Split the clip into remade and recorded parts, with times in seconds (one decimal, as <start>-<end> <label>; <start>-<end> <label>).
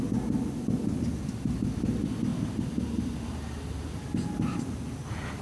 0.0-2.3 recorded; 2.3-3.8 remade; 3.8-5.4 recorded